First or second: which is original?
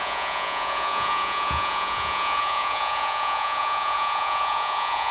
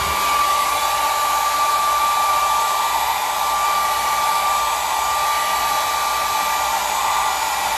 second